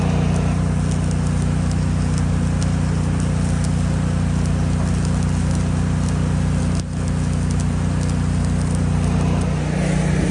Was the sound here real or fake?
real